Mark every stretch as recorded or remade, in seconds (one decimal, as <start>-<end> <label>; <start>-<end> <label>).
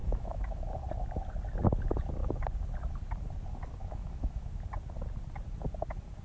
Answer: 0.0-0.6 remade; 0.6-3.8 recorded; 3.8-4.5 remade; 4.5-6.2 recorded